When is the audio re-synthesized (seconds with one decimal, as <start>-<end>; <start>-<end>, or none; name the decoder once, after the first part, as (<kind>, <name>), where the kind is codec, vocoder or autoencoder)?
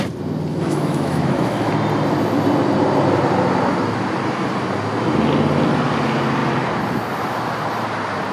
0.5-1.7 (autoencoder, DAC-VAE)